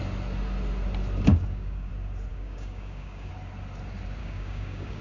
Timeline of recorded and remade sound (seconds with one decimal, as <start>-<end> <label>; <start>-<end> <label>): 0.0-1.3 recorded; 1.3-1.9 remade; 1.9-2.3 recorded; 2.3-3.3 remade; 3.3-4.2 recorded; 4.2-5.0 remade